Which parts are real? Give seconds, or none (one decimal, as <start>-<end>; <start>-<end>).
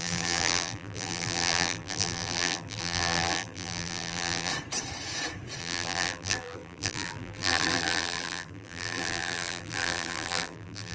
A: 4.5-5.6